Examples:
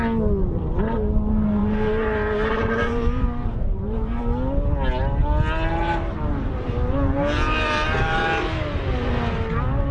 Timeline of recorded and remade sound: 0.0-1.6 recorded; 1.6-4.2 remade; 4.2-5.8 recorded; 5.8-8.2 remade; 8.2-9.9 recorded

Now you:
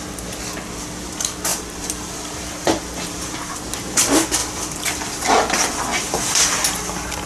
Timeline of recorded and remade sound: 0.0-1.5 recorded; 1.5-3.2 remade; 3.2-4.4 recorded; 4.4-6.7 remade; 6.7-7.3 recorded

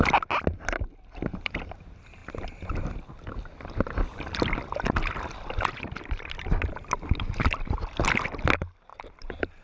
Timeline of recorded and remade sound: 0.0-8.9 recorded; 8.9-9.6 remade

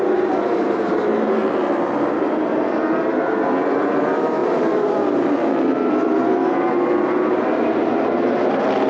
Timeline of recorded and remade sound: 0.0-1.4 remade; 1.4-2.1 recorded; 2.1-8.9 remade

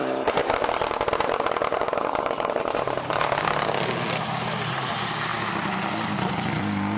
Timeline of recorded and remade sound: 0.0-2.6 remade; 2.6-7.0 recorded

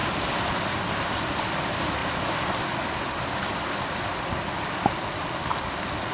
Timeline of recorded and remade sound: 0.0-2.0 recorded; 2.0-2.7 remade; 2.7-6.1 recorded

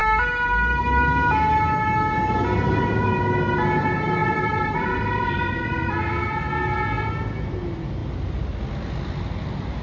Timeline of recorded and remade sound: 0.0-4.2 recorded; 4.2-6.3 remade; 6.3-9.8 recorded